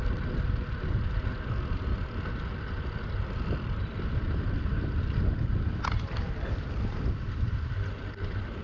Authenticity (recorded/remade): recorded